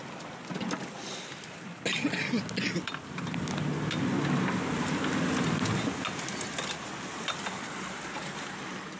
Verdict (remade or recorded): recorded